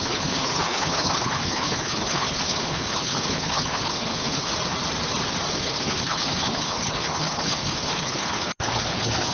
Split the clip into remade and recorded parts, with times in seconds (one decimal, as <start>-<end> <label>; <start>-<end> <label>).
0.0-4.5 remade; 4.5-5.5 recorded; 5.5-9.3 remade